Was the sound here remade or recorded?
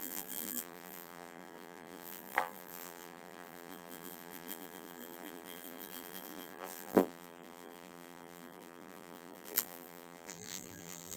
remade